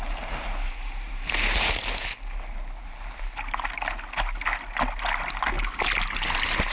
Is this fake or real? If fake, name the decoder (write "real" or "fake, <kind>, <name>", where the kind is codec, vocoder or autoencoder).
real